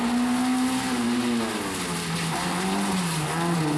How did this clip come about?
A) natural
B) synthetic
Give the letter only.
A